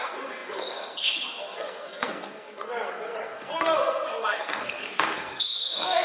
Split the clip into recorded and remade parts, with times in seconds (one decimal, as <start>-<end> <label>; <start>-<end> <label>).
0.0-6.0 remade